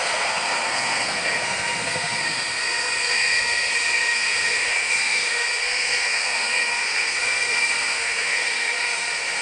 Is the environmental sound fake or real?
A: fake